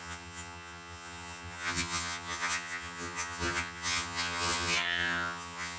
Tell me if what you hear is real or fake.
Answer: fake